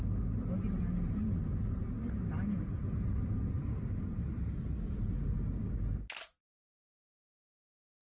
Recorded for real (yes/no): yes